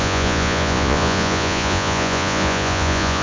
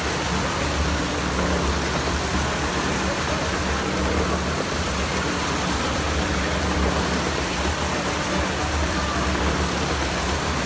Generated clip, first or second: first